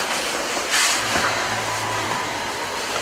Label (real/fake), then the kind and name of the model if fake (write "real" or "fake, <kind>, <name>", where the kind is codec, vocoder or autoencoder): fake, vocoder, BigVGAN v2